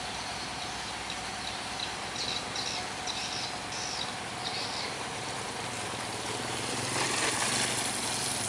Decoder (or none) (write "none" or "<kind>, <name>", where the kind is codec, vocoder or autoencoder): none